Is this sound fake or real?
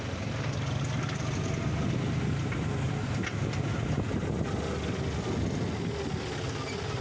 real